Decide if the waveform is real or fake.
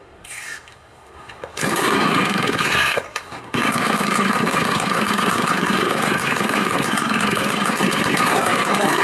fake